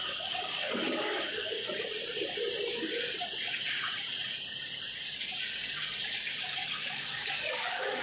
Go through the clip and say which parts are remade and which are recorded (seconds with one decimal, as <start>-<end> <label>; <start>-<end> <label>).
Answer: 0.0-1.6 remade; 1.6-6.4 recorded; 6.4-8.0 remade